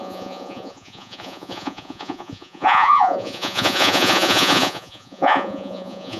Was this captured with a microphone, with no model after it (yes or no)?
no